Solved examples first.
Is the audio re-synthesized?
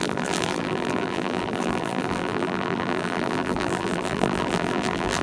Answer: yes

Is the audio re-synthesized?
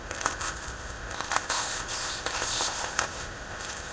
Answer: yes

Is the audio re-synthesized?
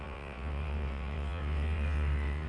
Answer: yes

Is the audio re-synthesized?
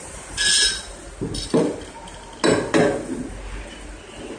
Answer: no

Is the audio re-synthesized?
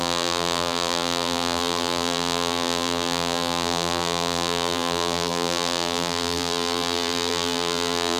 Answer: yes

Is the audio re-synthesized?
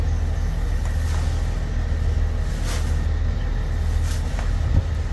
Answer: no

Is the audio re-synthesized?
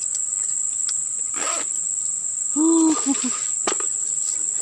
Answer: no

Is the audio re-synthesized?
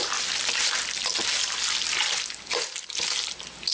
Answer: no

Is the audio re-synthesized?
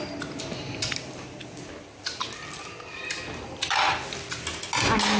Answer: no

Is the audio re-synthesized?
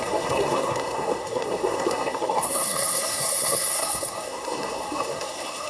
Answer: yes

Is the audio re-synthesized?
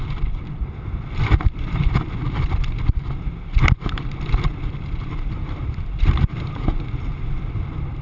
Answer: no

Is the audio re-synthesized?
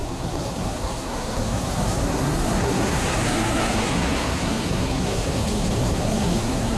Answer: yes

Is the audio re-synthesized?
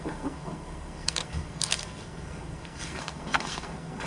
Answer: yes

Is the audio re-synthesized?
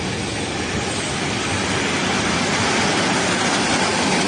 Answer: yes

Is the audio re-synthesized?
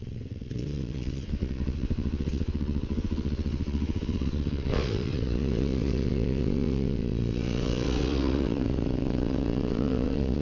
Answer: yes